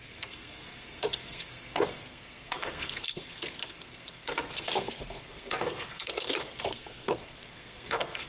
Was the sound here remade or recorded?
remade